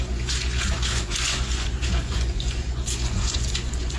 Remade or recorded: remade